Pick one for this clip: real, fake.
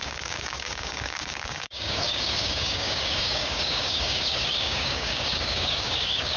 fake